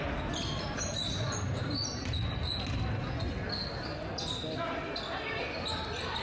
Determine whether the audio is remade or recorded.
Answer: recorded